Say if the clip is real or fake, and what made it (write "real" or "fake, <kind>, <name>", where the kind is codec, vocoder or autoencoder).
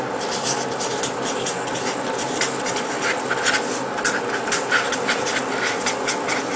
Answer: real